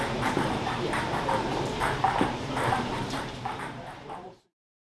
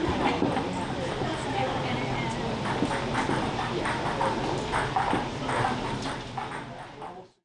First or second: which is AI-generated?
first